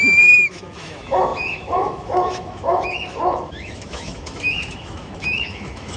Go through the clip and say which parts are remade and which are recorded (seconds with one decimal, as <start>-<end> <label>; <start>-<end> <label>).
0.0-6.0 remade